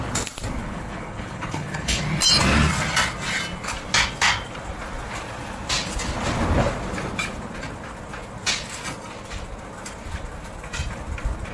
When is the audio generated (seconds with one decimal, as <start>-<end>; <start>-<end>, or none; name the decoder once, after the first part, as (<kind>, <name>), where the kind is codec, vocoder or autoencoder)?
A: 0.6-2.0 (codec, HILCodec)